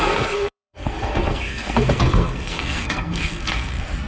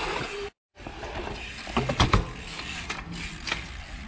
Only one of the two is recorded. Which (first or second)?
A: second